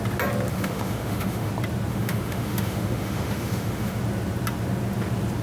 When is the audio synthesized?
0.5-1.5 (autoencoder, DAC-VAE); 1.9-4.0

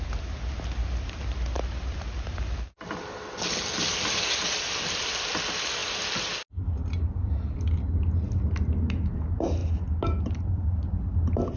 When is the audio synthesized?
none

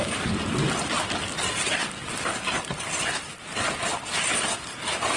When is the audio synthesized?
none

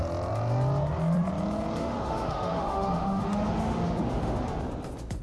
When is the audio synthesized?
1.8-4.6 (autoencoder, DAC-VAE)

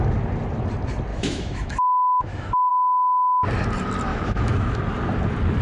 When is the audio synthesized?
1.1-2.7 (autoencoder, DAC-VAE); 4.1-4.8

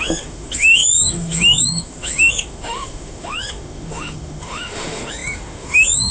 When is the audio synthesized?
0.0-6.1 (autoencoder, DAC-VAE)

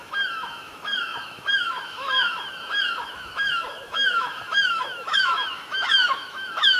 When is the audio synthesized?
0.0-6.8 (autoencoder, DAC-VAE)